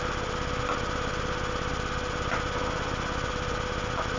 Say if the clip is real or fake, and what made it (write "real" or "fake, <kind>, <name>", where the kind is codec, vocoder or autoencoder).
real